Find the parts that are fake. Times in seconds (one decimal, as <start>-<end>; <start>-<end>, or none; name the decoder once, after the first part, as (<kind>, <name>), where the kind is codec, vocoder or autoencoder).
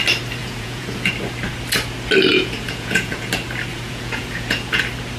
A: 0.4-1.1 (vocoder, Vocos); 2.3-3.3; 3.7-4.8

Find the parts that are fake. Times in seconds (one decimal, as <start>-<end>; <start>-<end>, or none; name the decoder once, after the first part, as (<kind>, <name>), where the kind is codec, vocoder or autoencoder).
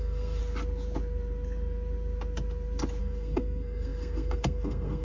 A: 0.0-0.4 (codec, SNAC); 3.0-5.0